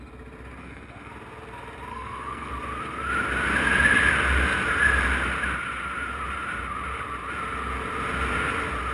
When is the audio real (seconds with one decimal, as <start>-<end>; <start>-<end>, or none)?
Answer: 0.0-0.6; 1.1-1.9; 2.5-8.9